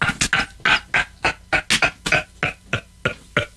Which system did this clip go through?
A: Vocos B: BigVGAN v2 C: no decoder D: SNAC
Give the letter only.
C